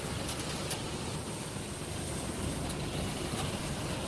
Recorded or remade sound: recorded